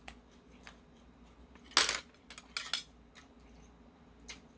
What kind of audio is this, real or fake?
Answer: real